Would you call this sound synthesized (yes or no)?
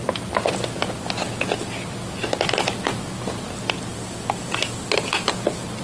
no